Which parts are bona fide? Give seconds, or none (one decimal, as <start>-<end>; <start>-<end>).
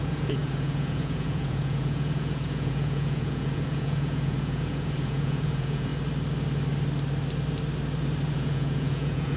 5.9-8.3